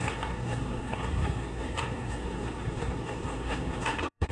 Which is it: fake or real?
fake